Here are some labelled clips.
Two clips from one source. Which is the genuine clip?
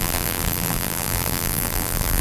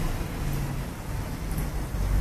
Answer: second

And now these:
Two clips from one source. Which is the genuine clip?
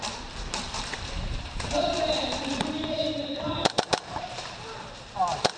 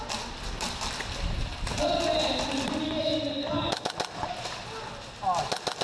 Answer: second